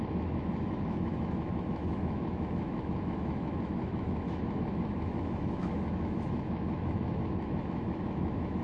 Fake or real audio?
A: fake